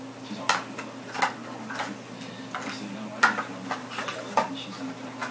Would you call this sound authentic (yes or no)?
yes